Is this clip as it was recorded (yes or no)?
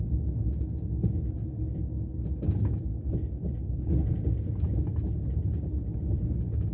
yes